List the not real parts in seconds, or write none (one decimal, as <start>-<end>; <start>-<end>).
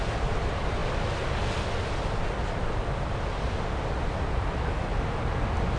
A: none